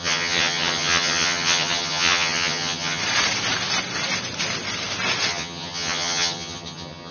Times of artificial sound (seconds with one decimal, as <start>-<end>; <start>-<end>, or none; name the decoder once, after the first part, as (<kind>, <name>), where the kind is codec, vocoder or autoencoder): 0.0-3.0 (vocoder, HiFi-GAN); 5.3-7.1